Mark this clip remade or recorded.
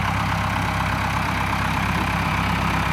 remade